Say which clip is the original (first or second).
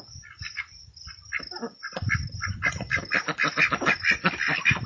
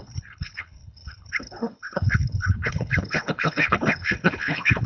first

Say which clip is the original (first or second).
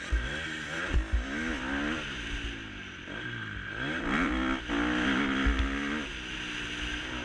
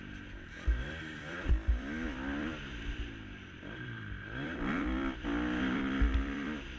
first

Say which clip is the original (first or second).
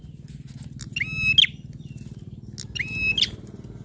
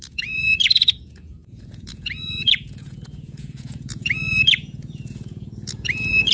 first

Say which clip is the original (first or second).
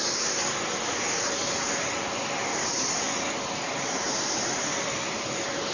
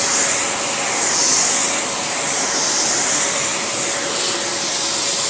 second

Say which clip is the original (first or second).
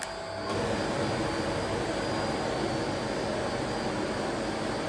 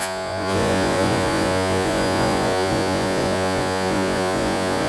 first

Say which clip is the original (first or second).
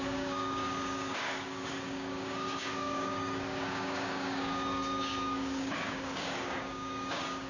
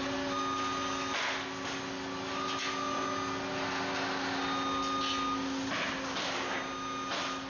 second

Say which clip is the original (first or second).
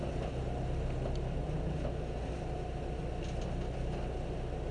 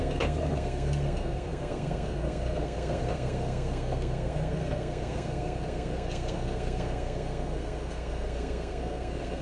first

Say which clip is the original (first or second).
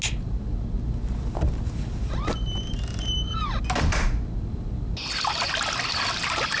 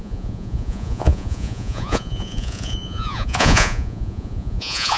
first